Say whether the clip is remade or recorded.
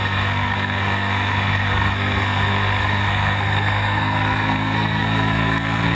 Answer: remade